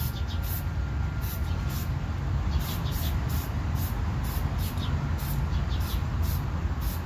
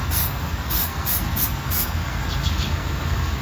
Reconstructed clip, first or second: second